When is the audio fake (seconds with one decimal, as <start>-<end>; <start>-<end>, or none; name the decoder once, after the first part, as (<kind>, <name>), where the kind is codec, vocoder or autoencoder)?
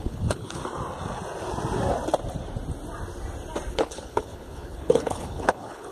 0.0-0.6 (codec, HILCodec); 3.7-5.9